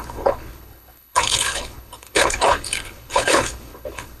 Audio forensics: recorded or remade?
remade